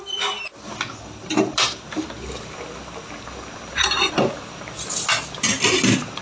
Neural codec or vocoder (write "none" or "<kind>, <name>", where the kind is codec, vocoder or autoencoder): none